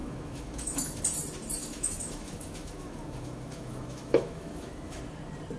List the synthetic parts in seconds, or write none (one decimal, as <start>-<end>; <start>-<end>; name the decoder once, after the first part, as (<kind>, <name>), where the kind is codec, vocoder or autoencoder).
0.0-1.0 (autoencoder, DAC-VAE); 1.6-5.0